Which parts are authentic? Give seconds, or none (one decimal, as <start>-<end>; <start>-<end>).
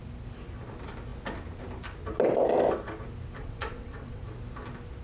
0.0-3.4; 4.2-5.0